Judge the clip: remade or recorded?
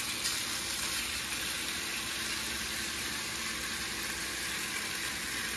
recorded